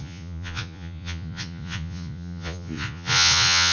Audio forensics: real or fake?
fake